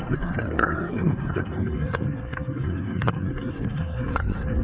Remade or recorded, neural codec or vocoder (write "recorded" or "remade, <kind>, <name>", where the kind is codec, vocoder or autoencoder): remade, codec, SNAC